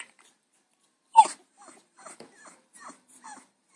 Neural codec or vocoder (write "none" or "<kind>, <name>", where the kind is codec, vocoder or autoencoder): vocoder, BigVGAN v2